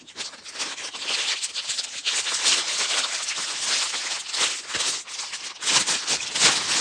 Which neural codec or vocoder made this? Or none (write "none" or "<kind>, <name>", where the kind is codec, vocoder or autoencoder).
none